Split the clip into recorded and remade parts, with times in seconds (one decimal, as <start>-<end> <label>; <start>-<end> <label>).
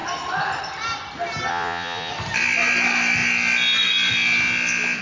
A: 0.0-1.5 recorded; 1.5-2.1 remade; 2.1-5.0 recorded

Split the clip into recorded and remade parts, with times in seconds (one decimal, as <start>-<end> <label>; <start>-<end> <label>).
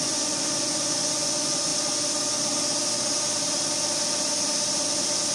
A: 0.0-1.7 remade; 1.7-5.3 recorded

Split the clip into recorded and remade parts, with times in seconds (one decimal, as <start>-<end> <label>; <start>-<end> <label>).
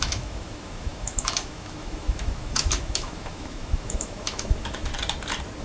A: 0.0-4.9 remade; 4.9-5.6 recorded